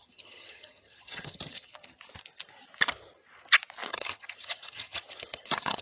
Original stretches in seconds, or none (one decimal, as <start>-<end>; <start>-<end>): 1.7-3.9